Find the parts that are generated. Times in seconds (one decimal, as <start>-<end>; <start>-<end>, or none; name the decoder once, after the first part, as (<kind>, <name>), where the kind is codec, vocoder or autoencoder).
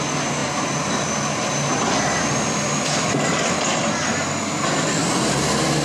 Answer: 0.4-3.9 (vocoder, BigVGAN v2)